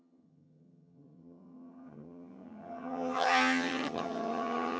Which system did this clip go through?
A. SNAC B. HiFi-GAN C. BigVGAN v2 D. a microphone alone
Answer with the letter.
B